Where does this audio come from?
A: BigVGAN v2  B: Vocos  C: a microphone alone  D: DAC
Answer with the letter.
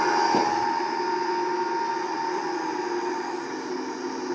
C